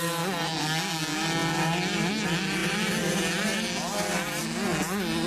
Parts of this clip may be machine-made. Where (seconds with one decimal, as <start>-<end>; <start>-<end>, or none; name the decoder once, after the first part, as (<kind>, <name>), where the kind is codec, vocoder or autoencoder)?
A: none